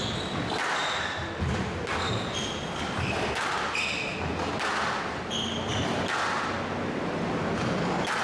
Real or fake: real